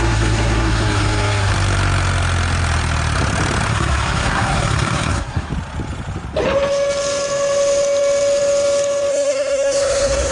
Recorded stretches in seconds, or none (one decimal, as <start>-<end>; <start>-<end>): 1.5-3.7; 5.5-9.1